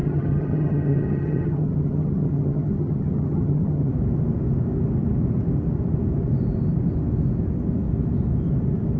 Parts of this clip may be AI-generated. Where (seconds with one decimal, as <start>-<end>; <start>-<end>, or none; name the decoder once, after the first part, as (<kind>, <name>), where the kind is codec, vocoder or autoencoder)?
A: 0.0-3.9 (vocoder, HiFi-GAN)